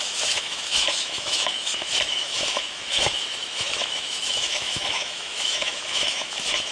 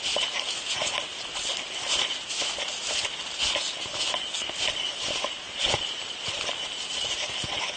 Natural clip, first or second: second